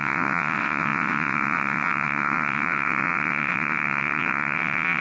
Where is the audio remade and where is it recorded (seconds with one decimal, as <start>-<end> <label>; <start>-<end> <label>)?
0.0-5.0 remade